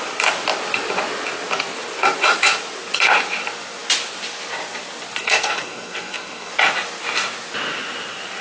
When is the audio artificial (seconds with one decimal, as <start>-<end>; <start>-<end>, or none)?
5.2-6.5